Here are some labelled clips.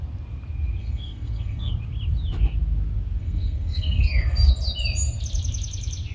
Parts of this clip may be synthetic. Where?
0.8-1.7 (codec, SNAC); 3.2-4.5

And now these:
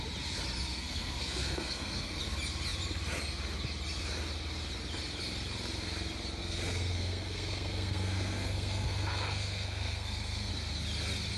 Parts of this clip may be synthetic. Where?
0.7-2.2 (codec, SNAC); 6.4-10.5

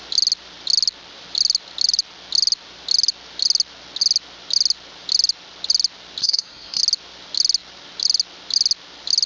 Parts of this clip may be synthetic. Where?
6.2-6.8 (codec, SNAC)

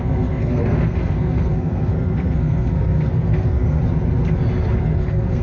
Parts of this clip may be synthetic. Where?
0.0-3.8 (codec, SNAC); 4.8-5.4

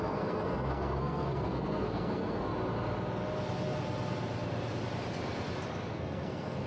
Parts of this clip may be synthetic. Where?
0.0-2.5 (codec, SNAC); 5.9-6.7